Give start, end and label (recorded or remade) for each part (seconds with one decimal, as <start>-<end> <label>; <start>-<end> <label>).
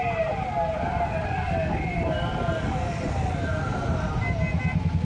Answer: 0.0-5.0 recorded